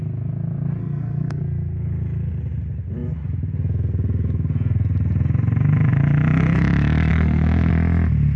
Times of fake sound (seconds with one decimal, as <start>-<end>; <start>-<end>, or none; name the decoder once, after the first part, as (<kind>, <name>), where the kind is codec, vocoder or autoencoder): 0.8-1.4 (codec, SNAC); 7.1-7.7